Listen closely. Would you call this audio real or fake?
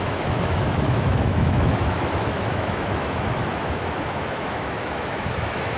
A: fake